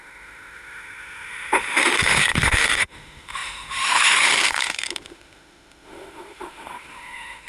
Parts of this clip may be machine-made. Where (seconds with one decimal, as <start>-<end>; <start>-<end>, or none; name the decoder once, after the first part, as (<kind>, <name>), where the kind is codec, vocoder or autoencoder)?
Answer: 0.0-7.5 (autoencoder, DAC-VAE)